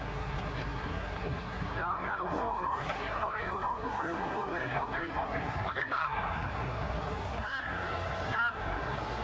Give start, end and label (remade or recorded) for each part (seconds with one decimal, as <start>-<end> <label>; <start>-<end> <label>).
0.0-9.2 remade

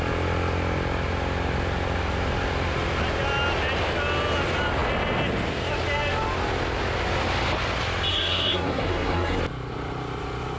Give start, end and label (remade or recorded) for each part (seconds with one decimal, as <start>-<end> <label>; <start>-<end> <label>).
0.0-8.1 recorded; 8.1-9.4 remade; 9.4-10.6 recorded

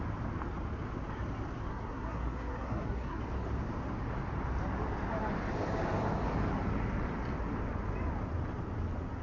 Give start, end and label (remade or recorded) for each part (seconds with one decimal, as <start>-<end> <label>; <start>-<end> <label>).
0.0-1.7 recorded; 1.7-3.2 remade; 3.2-9.2 recorded

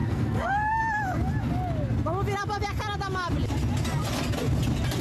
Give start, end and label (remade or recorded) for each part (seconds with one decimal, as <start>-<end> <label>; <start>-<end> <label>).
0.0-0.8 remade; 0.8-5.0 recorded

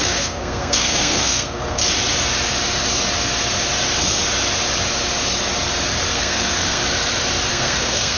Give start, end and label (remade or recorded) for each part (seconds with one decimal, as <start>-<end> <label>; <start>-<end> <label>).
0.0-1.8 remade; 1.8-6.1 recorded; 6.1-6.8 remade; 6.8-7.5 recorded; 7.5-8.2 remade

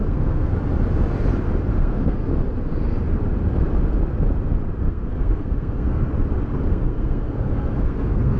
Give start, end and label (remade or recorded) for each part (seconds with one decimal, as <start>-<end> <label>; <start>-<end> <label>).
0.0-0.5 remade; 0.5-1.7 recorded; 1.7-2.3 remade; 2.3-4.8 recorded; 4.8-6.1 remade; 6.1-6.7 recorded; 6.7-8.4 remade

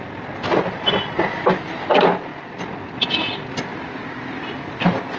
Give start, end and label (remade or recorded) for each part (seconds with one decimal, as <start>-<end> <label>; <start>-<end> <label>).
0.0-5.2 recorded

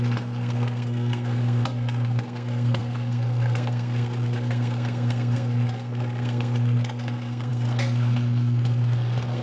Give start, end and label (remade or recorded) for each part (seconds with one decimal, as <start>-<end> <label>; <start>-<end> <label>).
0.0-9.4 remade